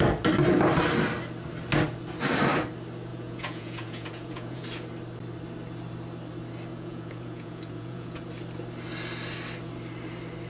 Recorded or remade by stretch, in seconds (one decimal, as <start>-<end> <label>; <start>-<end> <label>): 0.0-3.1 recorded; 3.1-4.6 remade; 4.6-6.7 recorded; 6.7-8.3 remade; 8.3-10.5 recorded